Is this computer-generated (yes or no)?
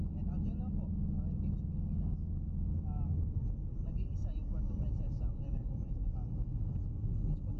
no